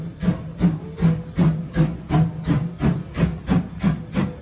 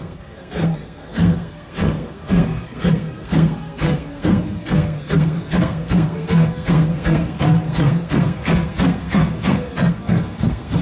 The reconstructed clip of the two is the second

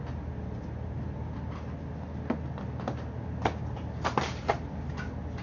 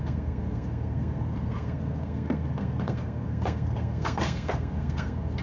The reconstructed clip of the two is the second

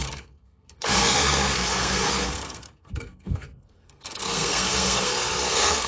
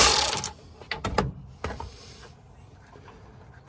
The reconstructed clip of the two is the first